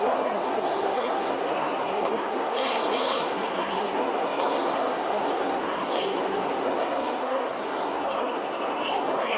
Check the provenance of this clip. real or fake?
fake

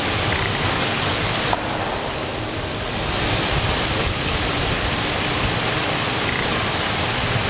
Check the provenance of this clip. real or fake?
fake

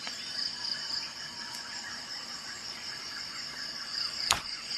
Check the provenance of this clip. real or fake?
fake